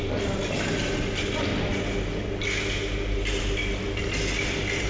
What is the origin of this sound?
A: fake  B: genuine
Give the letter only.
B